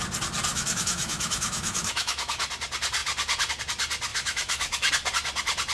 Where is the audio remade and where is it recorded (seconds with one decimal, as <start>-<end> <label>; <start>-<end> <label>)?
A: 0.0-0.5 recorded; 0.5-2.4 remade; 2.4-4.1 recorded; 4.1-4.9 remade; 4.9-5.7 recorded